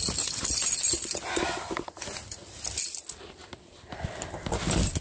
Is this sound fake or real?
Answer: real